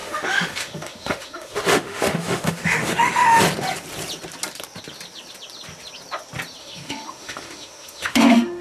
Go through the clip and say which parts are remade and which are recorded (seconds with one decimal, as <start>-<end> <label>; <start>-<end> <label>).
0.0-3.4 remade; 3.4-6.6 recorded; 6.6-8.6 remade